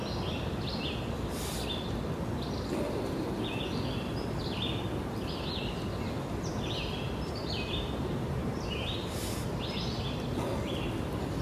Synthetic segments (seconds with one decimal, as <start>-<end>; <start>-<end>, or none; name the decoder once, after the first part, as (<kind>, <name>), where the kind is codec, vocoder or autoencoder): 6.5-9.8 (vocoder, BigVGAN v2)